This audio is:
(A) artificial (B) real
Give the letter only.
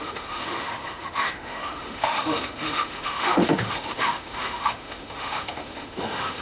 A